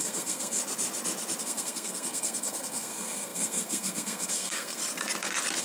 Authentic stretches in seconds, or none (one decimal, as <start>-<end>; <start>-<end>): 0.6-1.4; 4.8-5.6